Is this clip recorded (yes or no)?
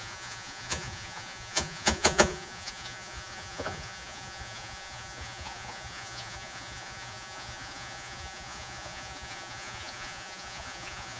no